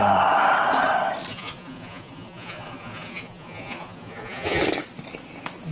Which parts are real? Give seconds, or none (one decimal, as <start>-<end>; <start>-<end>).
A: 0.0-1.3; 4.6-5.7